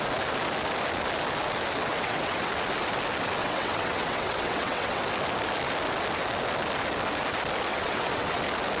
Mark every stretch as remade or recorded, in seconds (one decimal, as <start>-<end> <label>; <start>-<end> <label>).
0.0-1.9 recorded; 1.9-2.5 remade; 2.5-3.4 recorded; 3.4-5.0 remade; 5.0-7.7 recorded; 7.7-8.4 remade; 8.4-8.8 recorded